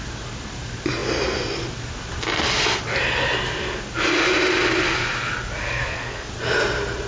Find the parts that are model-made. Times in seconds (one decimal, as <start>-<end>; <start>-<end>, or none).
5.6-6.3